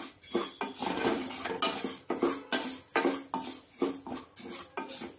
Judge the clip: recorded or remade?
recorded